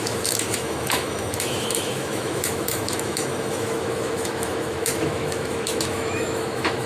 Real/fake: fake